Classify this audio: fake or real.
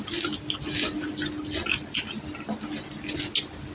real